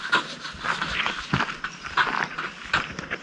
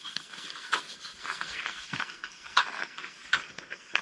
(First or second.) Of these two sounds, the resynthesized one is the second